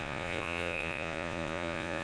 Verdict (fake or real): fake